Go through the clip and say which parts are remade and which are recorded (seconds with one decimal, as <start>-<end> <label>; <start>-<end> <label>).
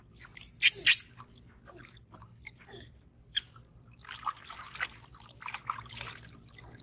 0.0-2.3 recorded; 2.3-4.6 remade; 4.6-6.8 recorded